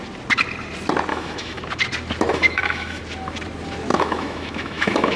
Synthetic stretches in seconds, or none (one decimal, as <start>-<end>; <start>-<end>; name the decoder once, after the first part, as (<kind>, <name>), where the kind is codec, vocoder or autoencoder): 1.1-1.6 (autoencoder, DAC-VAE); 2.3-3.0; 3.9-5.2